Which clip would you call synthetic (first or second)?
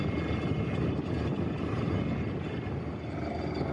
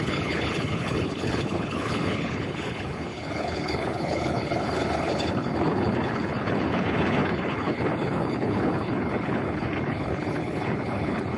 second